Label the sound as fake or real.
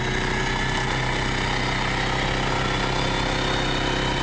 real